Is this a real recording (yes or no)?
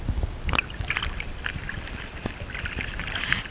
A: yes